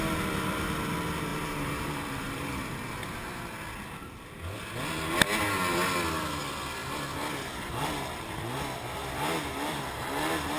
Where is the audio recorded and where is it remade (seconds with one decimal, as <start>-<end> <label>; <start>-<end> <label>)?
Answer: 0.0-1.3 recorded; 1.3-3.4 remade; 3.4-10.6 recorded